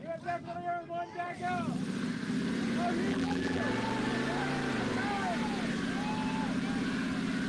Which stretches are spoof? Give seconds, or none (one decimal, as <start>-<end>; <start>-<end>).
3.1-3.6